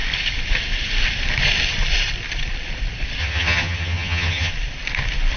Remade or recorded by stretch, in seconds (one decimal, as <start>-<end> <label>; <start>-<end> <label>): 0.0-3.2 recorded; 3.2-4.5 remade; 4.5-5.4 recorded